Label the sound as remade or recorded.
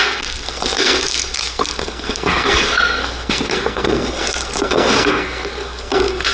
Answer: remade